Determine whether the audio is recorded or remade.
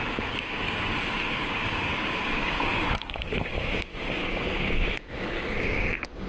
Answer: remade